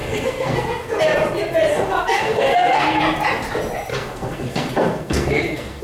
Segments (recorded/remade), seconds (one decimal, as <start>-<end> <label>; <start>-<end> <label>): 0.0-1.0 remade; 1.0-1.7 recorded; 1.7-3.0 remade; 3.0-3.9 recorded; 3.9-5.8 remade